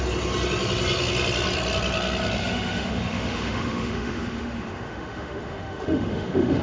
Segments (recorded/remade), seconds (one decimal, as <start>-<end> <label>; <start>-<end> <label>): 0.0-2.4 recorded; 2.4-6.6 remade